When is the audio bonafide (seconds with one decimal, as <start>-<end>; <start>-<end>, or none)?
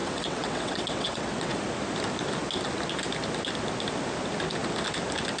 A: 1.6-5.4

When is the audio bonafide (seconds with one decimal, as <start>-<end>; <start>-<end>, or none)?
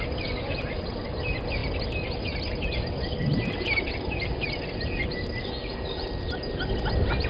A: 0.0-7.3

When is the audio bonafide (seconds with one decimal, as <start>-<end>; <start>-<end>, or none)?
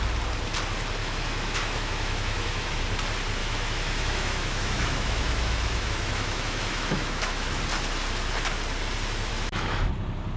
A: 0.0-1.0; 2.8-3.4; 7.6-9.3; 9.9-10.4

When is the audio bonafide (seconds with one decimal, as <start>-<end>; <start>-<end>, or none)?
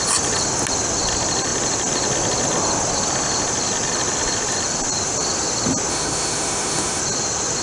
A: 0.0-5.9; 7.0-7.6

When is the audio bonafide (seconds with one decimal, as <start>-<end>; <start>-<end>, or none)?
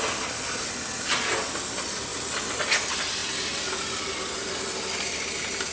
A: 0.0-5.7